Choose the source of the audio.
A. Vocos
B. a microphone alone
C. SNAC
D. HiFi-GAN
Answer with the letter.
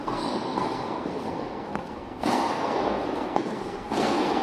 C